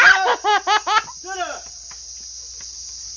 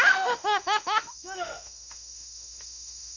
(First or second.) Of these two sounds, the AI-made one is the second